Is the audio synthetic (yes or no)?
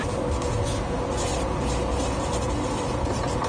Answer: no